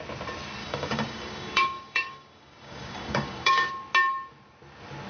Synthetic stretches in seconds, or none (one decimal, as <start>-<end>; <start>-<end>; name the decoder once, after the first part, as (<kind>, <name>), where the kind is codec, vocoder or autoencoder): 0.6-3.7 (codec, DAC)